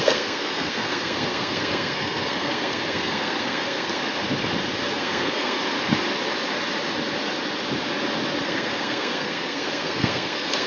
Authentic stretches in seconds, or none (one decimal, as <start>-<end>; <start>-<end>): 4.0-4.9; 5.6-8.4